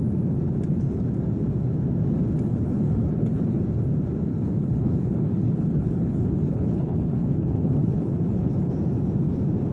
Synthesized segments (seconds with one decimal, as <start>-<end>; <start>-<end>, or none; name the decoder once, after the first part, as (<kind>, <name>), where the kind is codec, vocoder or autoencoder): 2.5-3.6 (codec, HILCodec); 4.3-8.7